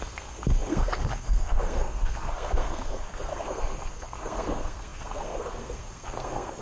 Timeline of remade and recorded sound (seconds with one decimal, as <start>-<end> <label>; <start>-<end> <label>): 0.0-6.6 remade